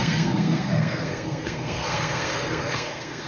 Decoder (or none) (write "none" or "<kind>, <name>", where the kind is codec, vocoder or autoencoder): codec, SNAC